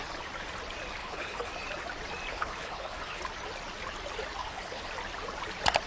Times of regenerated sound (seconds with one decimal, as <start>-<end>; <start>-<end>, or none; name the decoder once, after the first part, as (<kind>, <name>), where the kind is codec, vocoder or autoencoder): 1.0-1.5 (codec, HILCodec); 2.3-3.2; 4.4-4.9